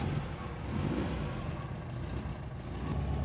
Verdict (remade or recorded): recorded